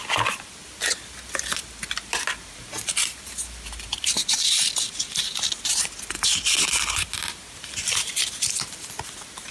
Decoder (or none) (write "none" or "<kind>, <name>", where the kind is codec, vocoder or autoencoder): none